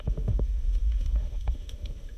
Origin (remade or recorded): remade